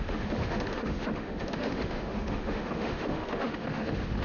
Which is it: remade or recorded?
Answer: remade